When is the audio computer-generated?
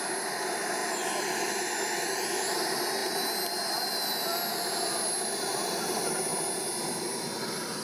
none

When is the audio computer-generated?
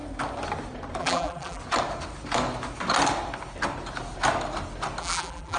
1.0-1.6 (vocoder, BigVGAN v2); 5.0-5.6